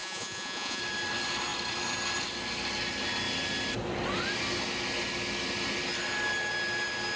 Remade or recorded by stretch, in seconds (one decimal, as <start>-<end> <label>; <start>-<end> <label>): 0.0-0.8 remade; 0.8-7.2 recorded